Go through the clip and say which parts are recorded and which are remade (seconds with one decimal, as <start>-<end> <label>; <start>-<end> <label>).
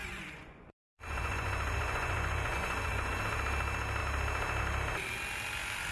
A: 0.0-3.2 remade; 3.2-5.9 recorded